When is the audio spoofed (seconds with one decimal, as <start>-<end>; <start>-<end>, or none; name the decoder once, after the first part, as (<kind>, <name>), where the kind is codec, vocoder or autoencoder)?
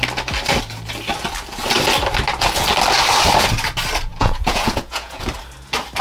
4.1-5.3 (vocoder, Vocos)